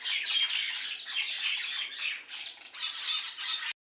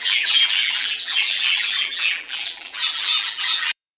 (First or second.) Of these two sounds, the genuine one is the first